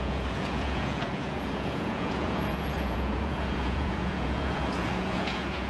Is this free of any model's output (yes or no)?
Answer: no